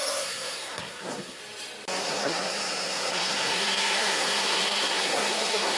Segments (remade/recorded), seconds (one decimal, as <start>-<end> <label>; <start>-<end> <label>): 0.0-1.4 remade; 1.4-2.0 recorded; 2.0-5.8 remade